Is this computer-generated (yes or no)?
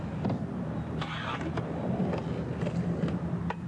no